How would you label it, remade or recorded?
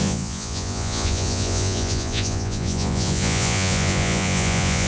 remade